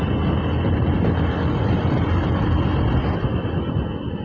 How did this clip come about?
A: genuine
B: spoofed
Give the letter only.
A